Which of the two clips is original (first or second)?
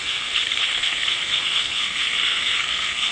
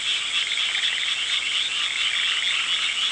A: second